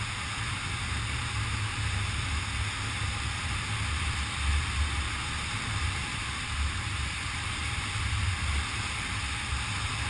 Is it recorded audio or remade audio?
recorded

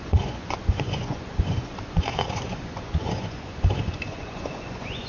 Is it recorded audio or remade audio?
remade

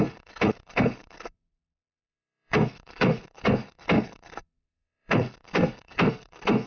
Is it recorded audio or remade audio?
remade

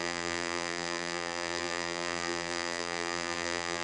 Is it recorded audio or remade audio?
remade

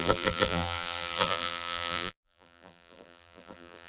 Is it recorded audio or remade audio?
remade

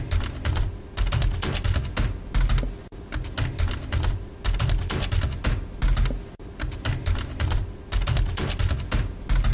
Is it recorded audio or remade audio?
recorded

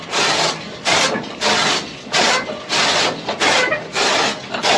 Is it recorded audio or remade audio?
recorded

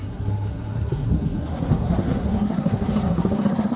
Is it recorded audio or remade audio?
remade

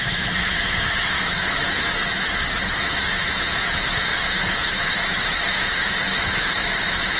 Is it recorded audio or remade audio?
remade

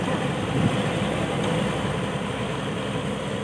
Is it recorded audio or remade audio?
recorded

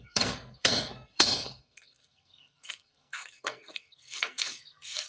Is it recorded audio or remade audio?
remade